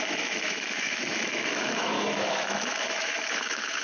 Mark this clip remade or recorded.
remade